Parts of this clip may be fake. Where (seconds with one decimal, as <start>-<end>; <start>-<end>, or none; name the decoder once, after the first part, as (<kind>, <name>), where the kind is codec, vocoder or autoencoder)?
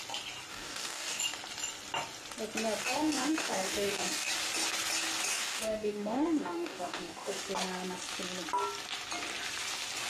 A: 0.5-1.2 (codec, DAC); 2.8-4.3; 5.3-7.4